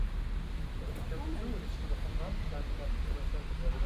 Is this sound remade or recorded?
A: recorded